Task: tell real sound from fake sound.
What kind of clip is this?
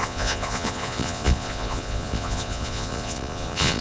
fake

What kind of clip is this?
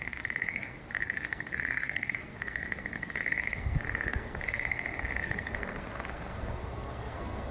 fake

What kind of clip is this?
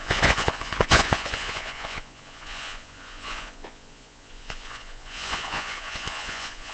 fake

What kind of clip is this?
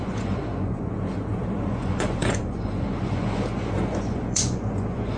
fake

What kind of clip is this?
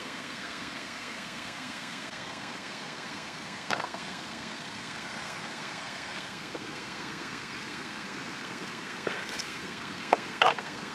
fake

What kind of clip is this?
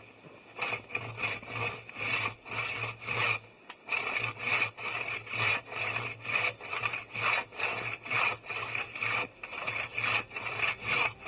real